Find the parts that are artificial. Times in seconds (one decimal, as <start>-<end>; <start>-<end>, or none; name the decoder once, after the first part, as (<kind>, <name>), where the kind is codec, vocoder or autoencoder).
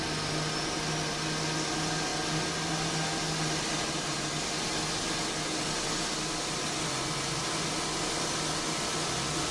none